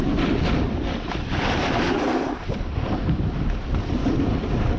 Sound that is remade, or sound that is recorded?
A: remade